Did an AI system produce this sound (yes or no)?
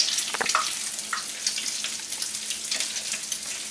no